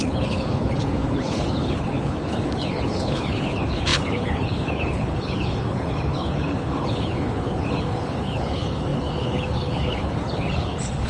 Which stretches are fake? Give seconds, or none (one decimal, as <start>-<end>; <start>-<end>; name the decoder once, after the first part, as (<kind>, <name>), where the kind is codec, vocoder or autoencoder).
0.0-11.1 (codec, HILCodec)